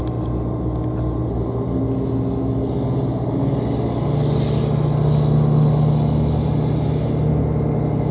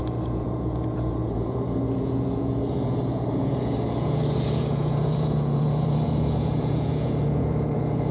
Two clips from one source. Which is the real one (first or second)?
first